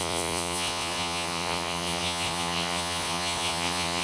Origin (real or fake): fake